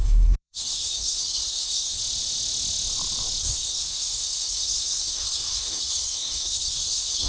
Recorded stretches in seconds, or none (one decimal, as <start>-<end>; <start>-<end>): 2.0-3.4